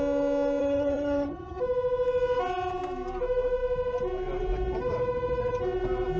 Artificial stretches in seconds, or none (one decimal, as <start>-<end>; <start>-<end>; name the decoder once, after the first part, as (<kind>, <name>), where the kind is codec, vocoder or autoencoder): 0.6-1.6 (vocoder, HiFi-GAN)

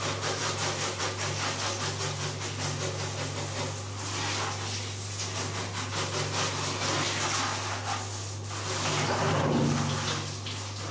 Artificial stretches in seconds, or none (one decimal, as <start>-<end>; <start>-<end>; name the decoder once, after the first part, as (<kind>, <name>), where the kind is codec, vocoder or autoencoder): none

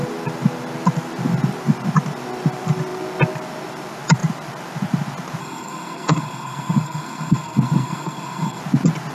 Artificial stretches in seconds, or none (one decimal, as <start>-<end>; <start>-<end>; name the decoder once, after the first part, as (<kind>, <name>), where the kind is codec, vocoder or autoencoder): 5.4-8.6 (codec, SNAC)

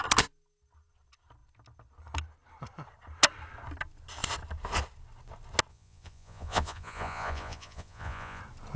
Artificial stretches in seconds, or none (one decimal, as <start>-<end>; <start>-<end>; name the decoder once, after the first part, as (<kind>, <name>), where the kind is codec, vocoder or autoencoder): 5.7-8.4 (vocoder, Vocos)

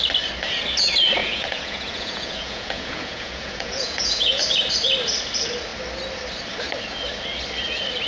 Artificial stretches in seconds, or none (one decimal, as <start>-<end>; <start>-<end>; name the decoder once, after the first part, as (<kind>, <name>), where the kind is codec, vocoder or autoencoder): 1.2-4.4 (vocoder, Vocos)